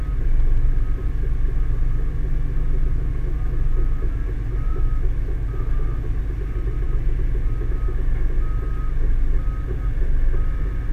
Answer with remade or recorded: recorded